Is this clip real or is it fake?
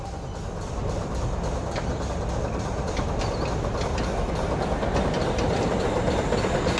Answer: real